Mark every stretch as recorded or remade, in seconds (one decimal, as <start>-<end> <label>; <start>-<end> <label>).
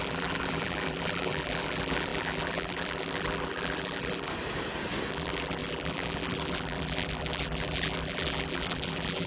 0.0-4.3 remade; 4.3-5.1 recorded; 5.1-9.3 remade